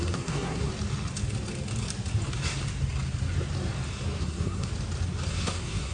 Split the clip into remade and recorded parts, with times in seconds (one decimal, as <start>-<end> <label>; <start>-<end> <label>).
0.0-0.7 remade; 0.7-4.2 recorded; 4.2-4.7 remade; 4.7-5.3 recorded; 5.3-5.9 remade